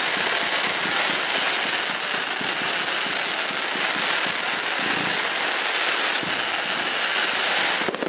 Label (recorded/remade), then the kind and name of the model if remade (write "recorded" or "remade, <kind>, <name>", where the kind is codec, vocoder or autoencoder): recorded